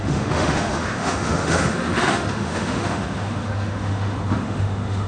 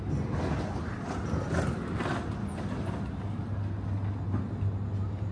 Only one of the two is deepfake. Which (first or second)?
first